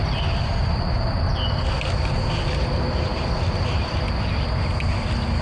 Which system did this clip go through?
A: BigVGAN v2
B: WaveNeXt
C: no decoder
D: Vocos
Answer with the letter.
C